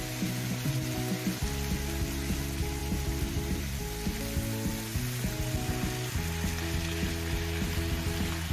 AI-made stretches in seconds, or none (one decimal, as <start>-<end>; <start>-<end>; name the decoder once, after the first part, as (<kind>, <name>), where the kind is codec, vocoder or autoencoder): 2.8-3.8 (vocoder, BigVGAN v2)